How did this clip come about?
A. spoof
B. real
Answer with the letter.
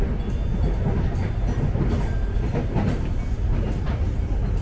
B